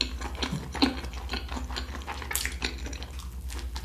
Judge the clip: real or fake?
real